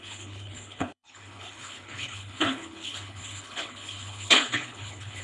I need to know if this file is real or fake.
fake